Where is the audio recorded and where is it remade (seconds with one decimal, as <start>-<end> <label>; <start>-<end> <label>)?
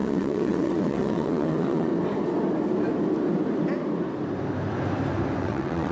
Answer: 0.0-1.9 remade; 1.9-5.4 recorded; 5.4-5.9 remade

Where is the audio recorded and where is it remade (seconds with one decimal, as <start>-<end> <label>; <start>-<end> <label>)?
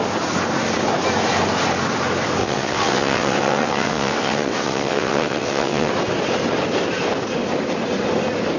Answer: 0.0-2.4 recorded; 2.4-5.9 remade; 5.9-8.6 recorded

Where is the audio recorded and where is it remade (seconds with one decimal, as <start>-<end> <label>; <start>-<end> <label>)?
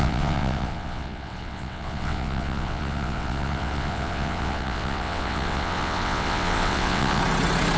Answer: 0.0-7.2 remade; 7.2-7.8 recorded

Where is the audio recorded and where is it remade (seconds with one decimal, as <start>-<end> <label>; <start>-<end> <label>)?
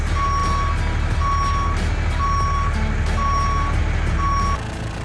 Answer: 0.0-5.0 recorded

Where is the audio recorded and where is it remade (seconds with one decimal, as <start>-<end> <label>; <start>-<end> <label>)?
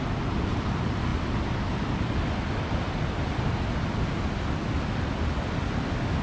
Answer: 0.0-6.2 recorded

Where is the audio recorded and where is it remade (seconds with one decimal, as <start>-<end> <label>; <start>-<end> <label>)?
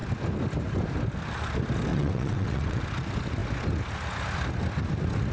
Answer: 0.0-1.9 recorded; 1.9-2.8 remade; 2.8-5.3 recorded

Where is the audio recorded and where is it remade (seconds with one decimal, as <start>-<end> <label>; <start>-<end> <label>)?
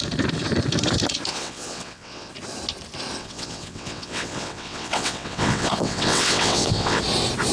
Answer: 0.0-1.3 recorded; 1.3-2.3 remade; 2.3-3.2 recorded; 3.2-7.0 remade; 7.0-7.5 recorded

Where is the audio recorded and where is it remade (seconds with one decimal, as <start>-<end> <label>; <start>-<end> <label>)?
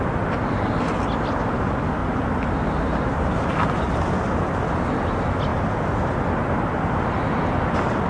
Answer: 0.0-8.1 recorded